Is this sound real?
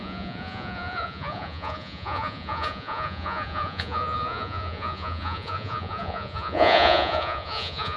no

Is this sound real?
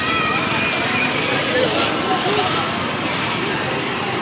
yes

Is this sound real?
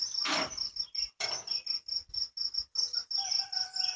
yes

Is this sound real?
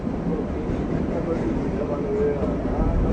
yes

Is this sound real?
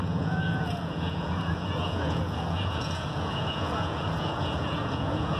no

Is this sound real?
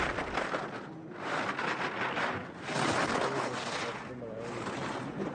yes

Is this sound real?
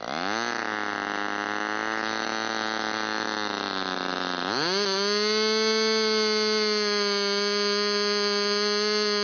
yes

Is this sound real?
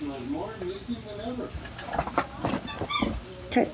yes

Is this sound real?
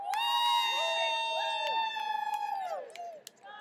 yes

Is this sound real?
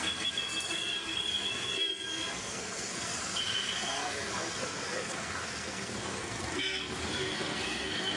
no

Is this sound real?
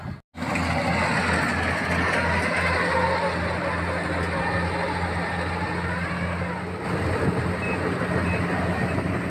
yes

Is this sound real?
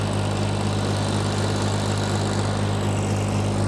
yes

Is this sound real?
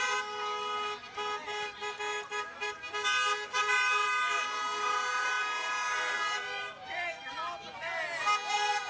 yes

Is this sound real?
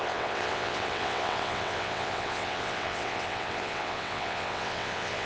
no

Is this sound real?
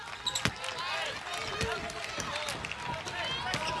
yes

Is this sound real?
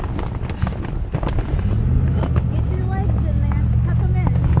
yes